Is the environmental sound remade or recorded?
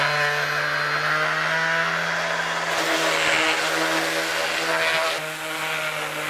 recorded